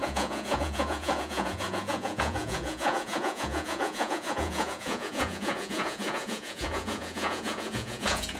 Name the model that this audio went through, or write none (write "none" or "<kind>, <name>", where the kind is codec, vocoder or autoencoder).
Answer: vocoder, Vocos